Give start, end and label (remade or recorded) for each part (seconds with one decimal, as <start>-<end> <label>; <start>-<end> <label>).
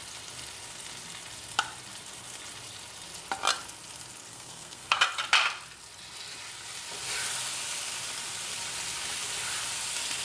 0.0-4.3 recorded; 4.3-5.0 remade; 5.0-10.2 recorded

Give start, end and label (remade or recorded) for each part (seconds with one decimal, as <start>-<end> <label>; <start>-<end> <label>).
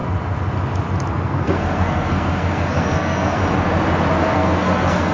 0.0-1.1 recorded; 1.1-3.4 remade; 3.4-4.2 recorded; 4.2-5.1 remade